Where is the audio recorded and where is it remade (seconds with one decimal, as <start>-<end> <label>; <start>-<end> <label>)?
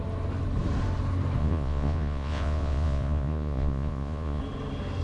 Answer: 0.0-1.4 recorded; 1.4-4.4 remade; 4.4-5.0 recorded